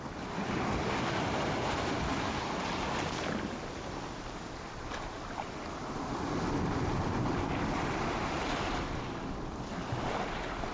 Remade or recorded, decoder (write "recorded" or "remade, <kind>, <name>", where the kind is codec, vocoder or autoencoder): recorded